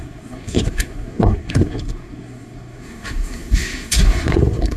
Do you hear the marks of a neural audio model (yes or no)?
yes